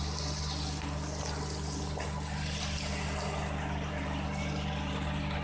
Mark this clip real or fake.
real